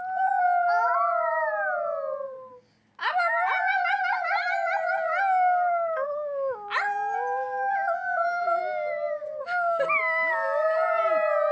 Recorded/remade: recorded